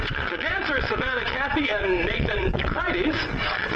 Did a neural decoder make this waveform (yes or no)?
yes